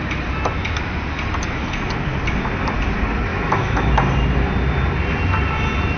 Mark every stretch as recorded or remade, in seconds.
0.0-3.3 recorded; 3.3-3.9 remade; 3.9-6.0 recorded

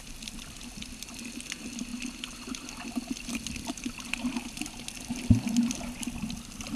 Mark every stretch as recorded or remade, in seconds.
0.0-6.8 recorded

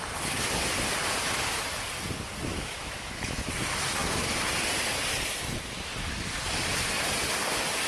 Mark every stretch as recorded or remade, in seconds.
0.0-2.5 recorded; 2.5-3.5 remade; 3.5-7.9 recorded

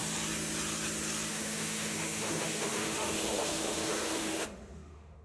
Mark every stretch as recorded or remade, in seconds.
0.0-1.3 recorded; 1.3-5.2 remade

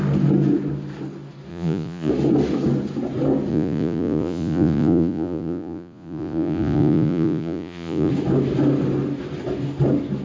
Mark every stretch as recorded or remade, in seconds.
0.0-1.5 recorded; 1.5-2.1 remade; 2.1-3.5 recorded; 3.5-8.1 remade; 8.1-10.2 recorded

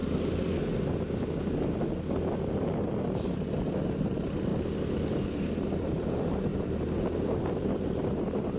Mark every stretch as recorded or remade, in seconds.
0.0-3.8 recorded; 3.8-4.5 remade; 4.5-5.5 recorded; 5.5-6.5 remade; 6.5-7.2 recorded; 7.2-8.6 remade

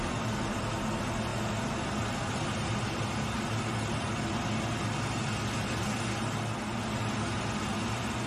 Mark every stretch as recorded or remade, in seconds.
0.0-8.3 recorded